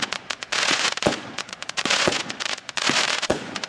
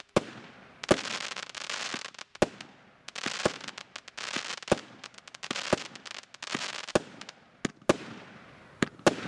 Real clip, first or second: second